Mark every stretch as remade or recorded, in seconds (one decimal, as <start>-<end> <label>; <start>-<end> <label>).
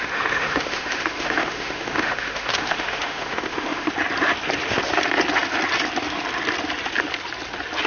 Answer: 0.0-3.9 remade; 3.9-7.9 recorded